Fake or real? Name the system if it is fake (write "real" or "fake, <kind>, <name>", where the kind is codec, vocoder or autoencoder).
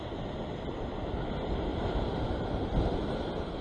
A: real